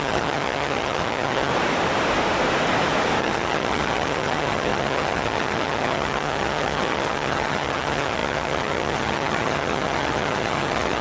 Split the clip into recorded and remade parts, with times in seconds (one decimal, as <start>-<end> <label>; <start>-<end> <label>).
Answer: 0.0-1.5 remade; 1.5-3.2 recorded; 3.2-11.0 remade